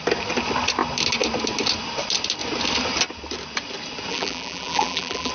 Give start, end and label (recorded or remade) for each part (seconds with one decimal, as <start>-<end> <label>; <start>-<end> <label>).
0.0-4.1 recorded; 4.1-5.3 remade